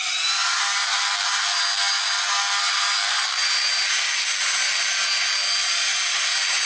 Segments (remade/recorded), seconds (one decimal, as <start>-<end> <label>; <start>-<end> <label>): 0.0-6.7 recorded